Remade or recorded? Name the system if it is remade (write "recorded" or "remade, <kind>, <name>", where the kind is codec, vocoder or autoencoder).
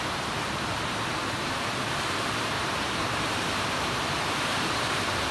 remade, vocoder, BigVGAN v2